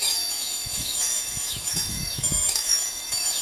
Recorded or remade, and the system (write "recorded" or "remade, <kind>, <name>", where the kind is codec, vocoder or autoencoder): remade, autoencoder, DAC-VAE